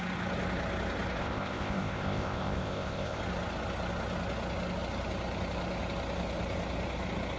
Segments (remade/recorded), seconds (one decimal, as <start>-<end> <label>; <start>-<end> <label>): 0.0-1.2 recorded; 1.2-3.2 remade; 3.2-7.4 recorded